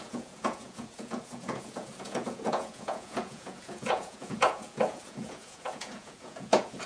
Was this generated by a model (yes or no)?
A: yes